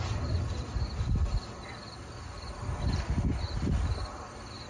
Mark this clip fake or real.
real